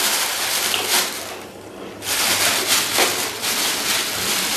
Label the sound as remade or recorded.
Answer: recorded